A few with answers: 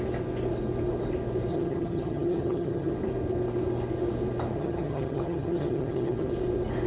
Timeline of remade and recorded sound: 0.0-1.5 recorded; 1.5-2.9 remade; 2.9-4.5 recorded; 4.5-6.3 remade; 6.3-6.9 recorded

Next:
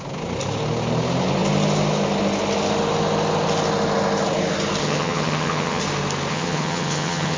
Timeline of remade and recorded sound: 0.0-4.8 recorded; 4.8-5.8 remade; 5.8-6.3 recorded; 6.3-7.4 remade

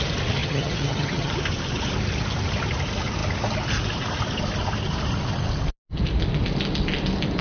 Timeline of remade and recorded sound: 0.0-0.4 recorded; 0.4-1.3 remade; 1.3-7.4 recorded

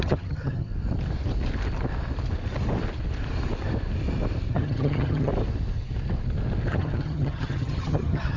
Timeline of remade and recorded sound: 0.0-0.7 remade; 0.7-4.5 recorded; 4.5-5.3 remade; 5.3-6.7 recorded; 6.7-8.4 remade

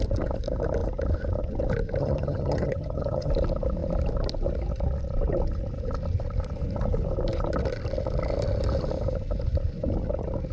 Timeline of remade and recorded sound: 0.0-2.0 recorded; 2.0-3.3 remade; 3.3-10.5 recorded

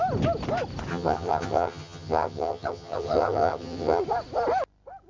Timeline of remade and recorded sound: 0.0-0.9 recorded; 0.9-4.0 remade; 4.0-5.1 recorded

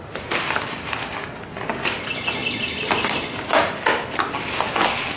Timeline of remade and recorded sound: 0.0-5.2 recorded